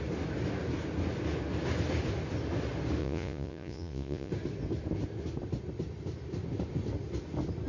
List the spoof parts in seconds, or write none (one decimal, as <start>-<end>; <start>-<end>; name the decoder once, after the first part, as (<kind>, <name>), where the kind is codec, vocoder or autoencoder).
3.0-4.3 (vocoder, Vocos)